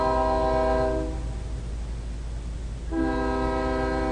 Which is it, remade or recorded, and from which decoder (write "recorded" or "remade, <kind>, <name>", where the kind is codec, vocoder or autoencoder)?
recorded